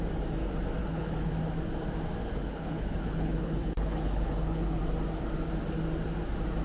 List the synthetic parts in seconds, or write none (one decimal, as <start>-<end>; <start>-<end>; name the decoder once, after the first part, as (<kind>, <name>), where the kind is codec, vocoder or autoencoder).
0.8-1.3 (codec, HILCodec); 2.2-4.8